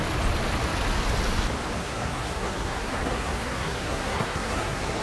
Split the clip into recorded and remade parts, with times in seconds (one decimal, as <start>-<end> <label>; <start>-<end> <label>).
0.0-1.8 recorded; 1.8-5.0 remade